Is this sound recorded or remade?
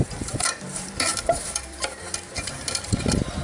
remade